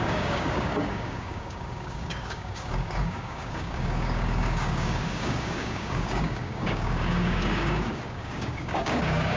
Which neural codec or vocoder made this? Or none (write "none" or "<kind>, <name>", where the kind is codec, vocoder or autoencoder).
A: codec, DAC